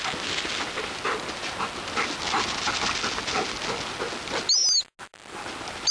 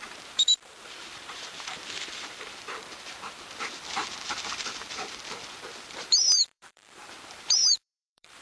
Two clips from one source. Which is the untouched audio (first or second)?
first